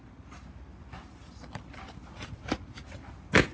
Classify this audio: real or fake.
real